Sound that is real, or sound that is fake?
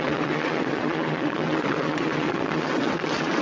fake